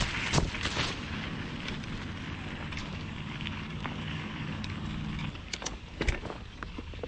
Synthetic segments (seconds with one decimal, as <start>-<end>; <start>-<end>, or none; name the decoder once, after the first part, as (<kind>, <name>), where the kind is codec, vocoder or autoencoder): 2.8-7.1 (codec, DAC)